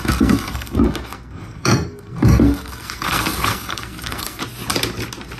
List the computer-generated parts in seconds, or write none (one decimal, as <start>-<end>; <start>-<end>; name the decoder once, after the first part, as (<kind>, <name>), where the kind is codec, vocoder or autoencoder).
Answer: 0.0-4.4 (codec, SNAC)